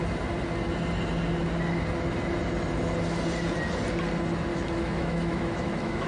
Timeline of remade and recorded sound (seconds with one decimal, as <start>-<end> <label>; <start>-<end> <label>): 0.0-4.5 recorded; 4.5-6.1 remade